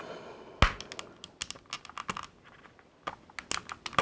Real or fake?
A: real